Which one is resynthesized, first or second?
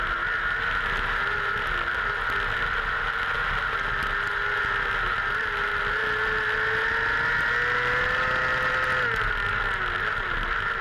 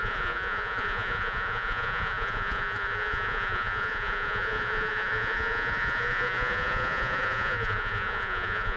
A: second